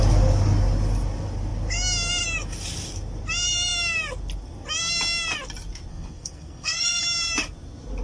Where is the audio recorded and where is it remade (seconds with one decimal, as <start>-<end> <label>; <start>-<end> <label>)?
0.0-5.9 recorded; 5.9-7.0 remade; 7.0-8.0 recorded